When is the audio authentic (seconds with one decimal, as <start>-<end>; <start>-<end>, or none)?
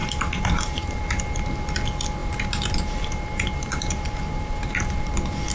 1.0-2.2; 5.1-5.5